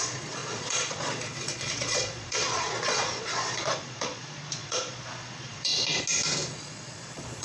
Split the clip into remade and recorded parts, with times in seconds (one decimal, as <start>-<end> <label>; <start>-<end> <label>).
0.0-5.7 remade; 5.7-6.5 recorded; 6.5-7.4 remade